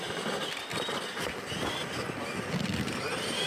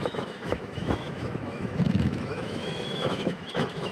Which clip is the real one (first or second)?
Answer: first